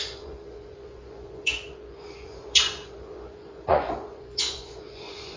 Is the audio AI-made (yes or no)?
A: yes